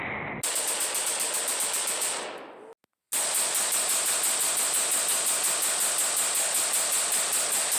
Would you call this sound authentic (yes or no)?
yes